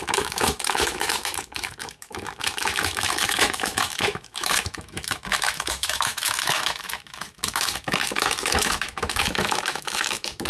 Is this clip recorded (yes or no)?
no